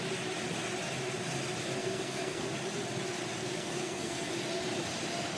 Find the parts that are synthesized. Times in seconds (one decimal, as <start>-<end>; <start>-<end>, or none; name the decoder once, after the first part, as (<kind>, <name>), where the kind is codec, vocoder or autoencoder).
1.8-2.5 (codec, SNAC); 3.4-4.3